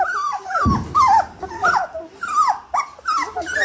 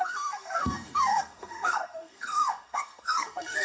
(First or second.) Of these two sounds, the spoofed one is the second